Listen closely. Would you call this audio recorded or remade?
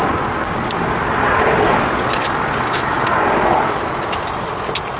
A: recorded